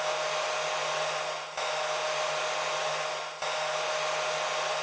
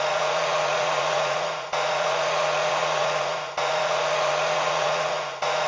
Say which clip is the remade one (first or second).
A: second